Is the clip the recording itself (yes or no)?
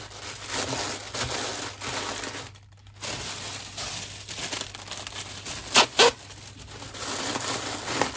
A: yes